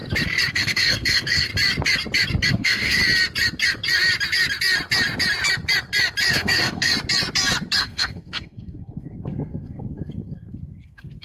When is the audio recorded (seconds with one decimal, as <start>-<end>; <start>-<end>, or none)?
0.0-0.5; 1.5-2.5; 3.0-6.3; 6.9-7.8